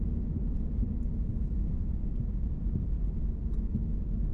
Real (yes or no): yes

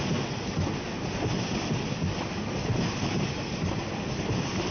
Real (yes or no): yes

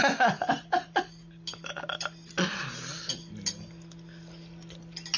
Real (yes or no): yes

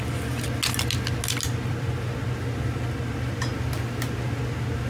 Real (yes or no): yes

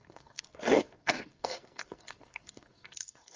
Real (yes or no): no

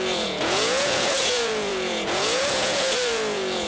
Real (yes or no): no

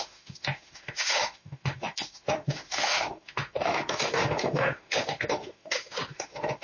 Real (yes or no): no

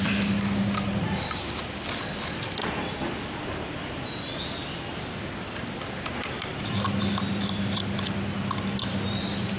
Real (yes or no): yes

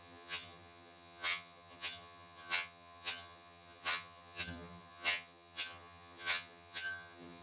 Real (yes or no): no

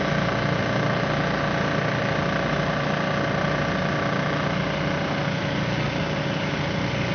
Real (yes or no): yes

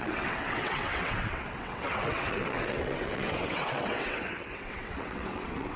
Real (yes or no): no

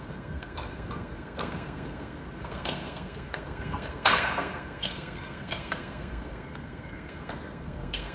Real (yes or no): no